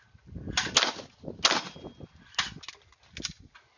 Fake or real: real